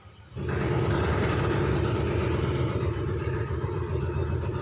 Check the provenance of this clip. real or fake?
fake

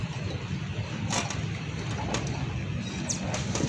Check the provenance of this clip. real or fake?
real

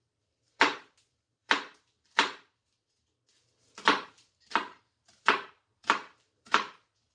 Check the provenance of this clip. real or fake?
fake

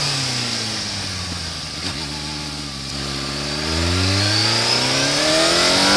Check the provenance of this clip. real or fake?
real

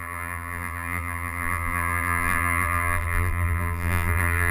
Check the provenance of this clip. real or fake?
fake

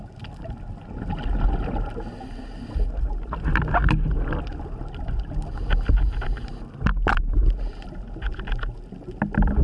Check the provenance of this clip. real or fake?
real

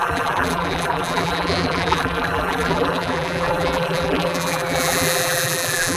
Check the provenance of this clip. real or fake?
fake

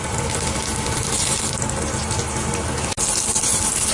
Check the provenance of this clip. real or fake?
real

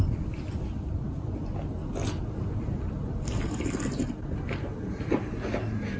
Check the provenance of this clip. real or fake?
real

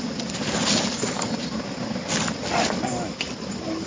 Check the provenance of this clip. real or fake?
real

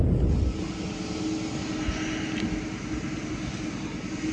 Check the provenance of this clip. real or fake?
real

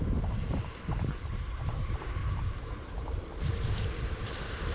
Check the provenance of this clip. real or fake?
fake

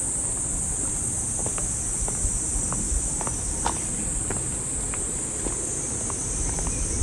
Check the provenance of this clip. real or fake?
real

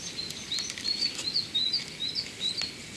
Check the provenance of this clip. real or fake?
real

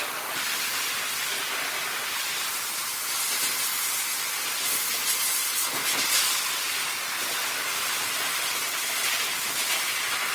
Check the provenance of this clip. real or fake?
real